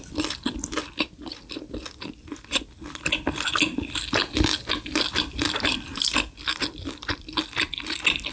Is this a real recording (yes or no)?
yes